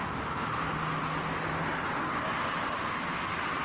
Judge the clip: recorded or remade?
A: recorded